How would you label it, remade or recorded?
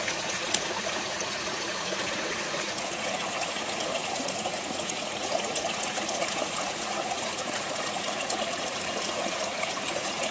remade